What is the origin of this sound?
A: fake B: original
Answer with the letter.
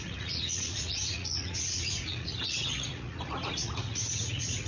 A